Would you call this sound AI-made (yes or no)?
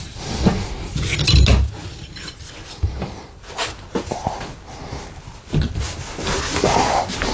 no